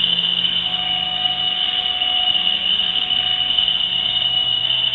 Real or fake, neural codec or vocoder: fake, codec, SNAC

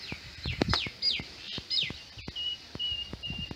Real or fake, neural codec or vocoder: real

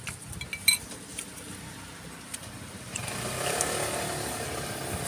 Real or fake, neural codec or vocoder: real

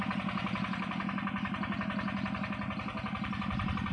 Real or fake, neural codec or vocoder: real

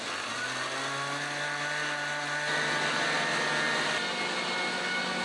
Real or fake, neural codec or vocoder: real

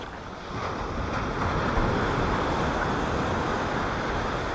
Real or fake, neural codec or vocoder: real